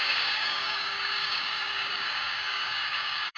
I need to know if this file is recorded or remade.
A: remade